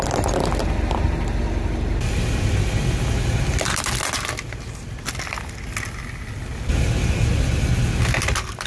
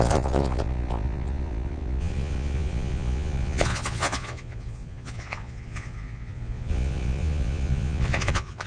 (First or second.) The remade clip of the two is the second